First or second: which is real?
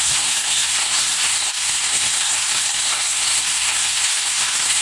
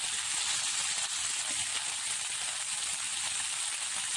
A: second